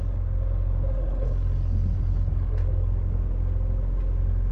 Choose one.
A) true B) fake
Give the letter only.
A